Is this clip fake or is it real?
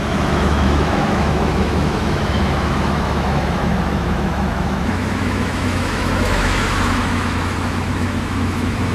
fake